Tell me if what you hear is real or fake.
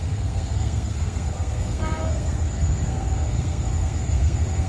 fake